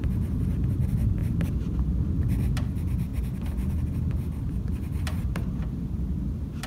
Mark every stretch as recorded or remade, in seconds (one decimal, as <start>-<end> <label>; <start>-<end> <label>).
0.0-3.1 remade; 3.1-4.5 recorded; 4.5-6.7 remade